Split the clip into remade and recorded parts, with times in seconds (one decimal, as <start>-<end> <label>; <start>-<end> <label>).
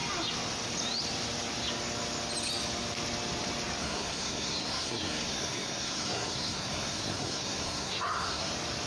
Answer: 0.0-3.8 recorded; 3.8-8.5 remade; 8.5-8.9 recorded